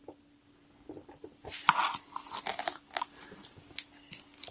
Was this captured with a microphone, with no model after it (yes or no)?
yes